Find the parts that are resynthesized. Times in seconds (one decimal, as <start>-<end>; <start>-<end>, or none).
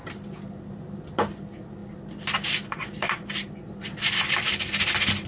none